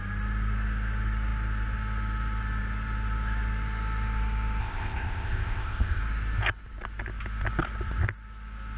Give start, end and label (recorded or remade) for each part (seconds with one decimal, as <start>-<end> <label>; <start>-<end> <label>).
0.0-4.6 recorded; 4.6-6.0 remade; 6.0-8.8 recorded